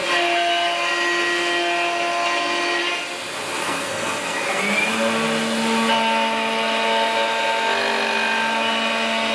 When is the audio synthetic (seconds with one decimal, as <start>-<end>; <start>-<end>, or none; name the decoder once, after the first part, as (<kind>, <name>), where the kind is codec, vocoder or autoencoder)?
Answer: 3.6-4.6 (codec, SNAC)